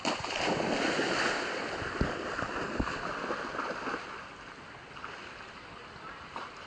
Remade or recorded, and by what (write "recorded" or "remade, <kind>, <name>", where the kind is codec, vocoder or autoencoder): recorded